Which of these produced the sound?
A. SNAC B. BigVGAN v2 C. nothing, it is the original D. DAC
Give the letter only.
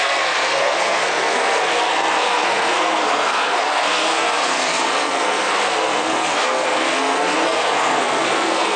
A